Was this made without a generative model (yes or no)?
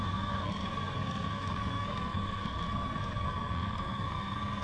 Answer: no